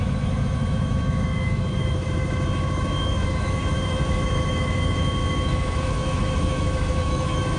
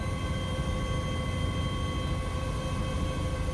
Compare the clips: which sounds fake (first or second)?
first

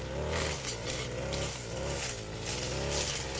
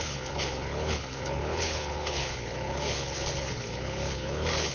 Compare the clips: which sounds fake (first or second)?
second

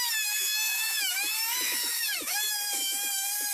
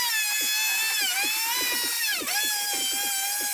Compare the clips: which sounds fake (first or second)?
first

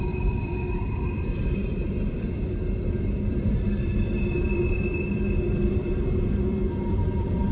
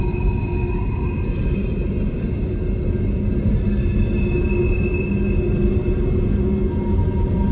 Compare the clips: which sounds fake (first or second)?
first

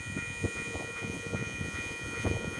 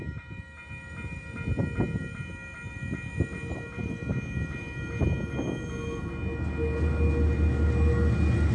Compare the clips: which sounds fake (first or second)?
first